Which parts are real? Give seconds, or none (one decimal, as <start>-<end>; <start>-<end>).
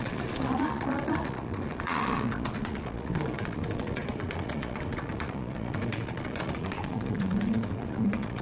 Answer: none